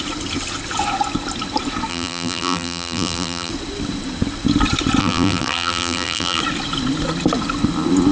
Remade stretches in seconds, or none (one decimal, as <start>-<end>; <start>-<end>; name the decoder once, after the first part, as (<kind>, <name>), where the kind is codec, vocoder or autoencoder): 1.9-3.5 (vocoder, BigVGAN v2); 5.0-6.4